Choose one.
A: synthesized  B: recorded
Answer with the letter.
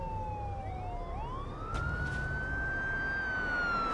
B